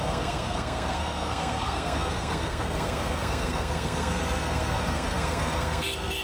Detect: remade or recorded remade